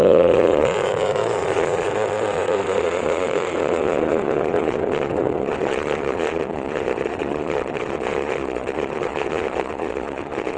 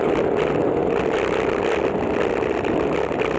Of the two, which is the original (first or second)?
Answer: second